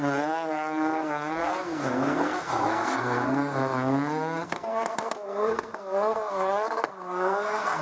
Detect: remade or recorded remade